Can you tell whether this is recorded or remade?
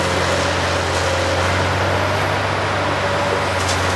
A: recorded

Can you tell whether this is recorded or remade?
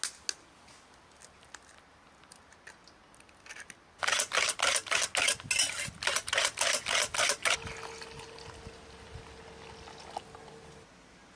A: recorded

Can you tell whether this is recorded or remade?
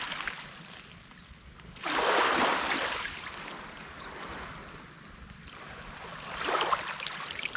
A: recorded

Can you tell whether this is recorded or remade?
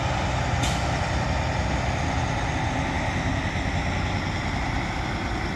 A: recorded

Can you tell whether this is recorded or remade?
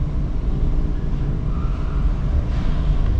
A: recorded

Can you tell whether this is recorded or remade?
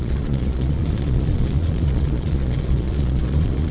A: remade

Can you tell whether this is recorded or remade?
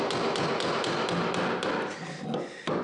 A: recorded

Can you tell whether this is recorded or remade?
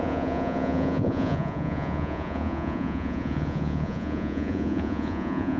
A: remade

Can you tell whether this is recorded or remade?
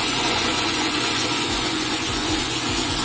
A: remade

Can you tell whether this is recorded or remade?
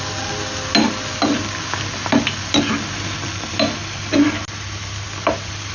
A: recorded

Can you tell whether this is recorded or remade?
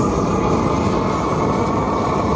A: recorded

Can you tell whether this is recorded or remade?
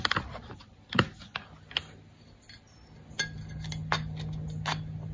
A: recorded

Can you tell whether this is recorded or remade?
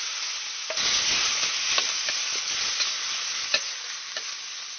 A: recorded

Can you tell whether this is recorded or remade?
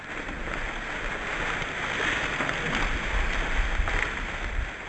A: recorded